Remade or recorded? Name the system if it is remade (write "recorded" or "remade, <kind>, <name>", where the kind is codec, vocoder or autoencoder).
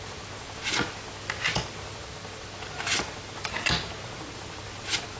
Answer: recorded